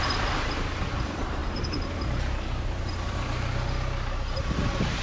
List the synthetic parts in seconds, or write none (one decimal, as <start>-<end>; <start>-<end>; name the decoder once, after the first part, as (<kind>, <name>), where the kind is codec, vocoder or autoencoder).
none